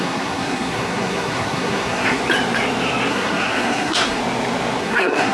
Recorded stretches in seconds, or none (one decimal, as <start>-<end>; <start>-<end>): 2.2-3.1; 4.2-4.8